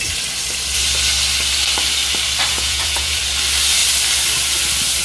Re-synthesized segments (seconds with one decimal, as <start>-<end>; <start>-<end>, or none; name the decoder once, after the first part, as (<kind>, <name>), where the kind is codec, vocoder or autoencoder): 2.5-3.2 (vocoder, Vocos)